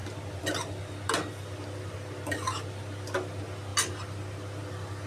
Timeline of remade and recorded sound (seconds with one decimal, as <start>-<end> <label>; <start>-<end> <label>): 0.0-5.1 recorded